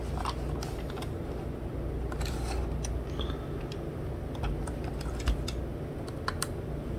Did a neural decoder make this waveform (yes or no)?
no